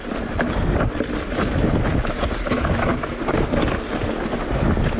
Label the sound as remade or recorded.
recorded